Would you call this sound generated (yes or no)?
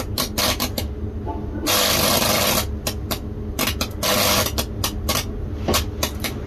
no